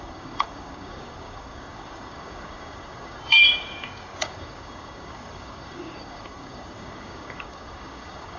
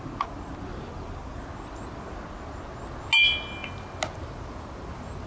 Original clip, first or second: second